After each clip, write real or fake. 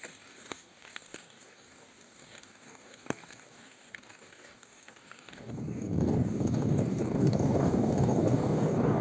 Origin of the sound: fake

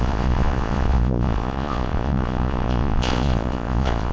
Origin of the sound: fake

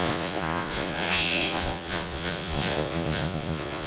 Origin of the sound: fake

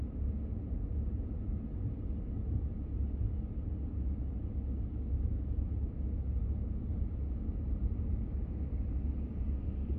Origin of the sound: real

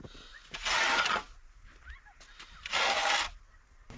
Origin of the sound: real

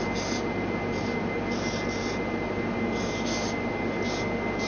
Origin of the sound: real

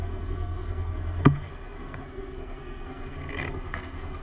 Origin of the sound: fake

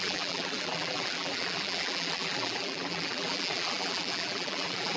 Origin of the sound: fake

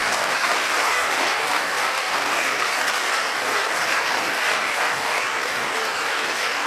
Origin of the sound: fake